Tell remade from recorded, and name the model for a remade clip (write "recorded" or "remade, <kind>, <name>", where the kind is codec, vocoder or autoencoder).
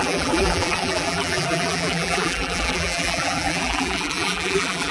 remade, vocoder, BigVGAN v2